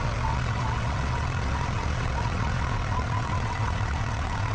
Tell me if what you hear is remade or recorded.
remade